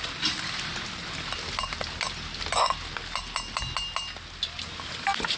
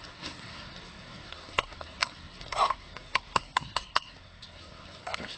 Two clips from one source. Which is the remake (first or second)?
second